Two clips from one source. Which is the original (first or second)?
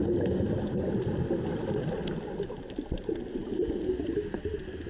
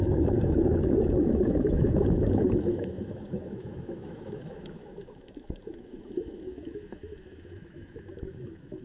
first